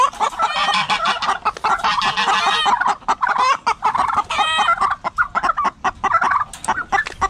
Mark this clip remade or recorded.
recorded